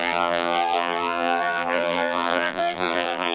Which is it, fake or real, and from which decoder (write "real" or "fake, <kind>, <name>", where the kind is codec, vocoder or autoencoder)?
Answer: fake, vocoder, BigVGAN v2